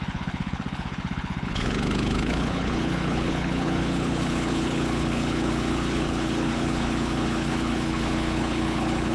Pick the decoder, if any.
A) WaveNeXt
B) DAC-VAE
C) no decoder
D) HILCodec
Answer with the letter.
D